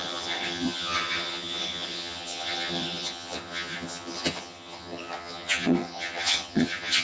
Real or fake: fake